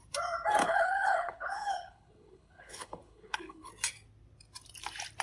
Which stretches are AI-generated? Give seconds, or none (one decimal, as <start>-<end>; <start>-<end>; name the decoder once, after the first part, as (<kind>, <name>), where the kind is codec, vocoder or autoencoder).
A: 0.6-3.7 (codec, HILCodec)